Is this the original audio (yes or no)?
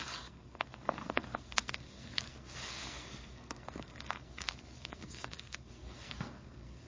no